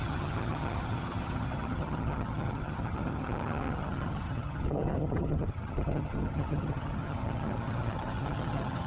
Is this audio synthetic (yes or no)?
yes